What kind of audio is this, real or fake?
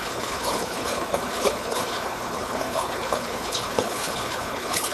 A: fake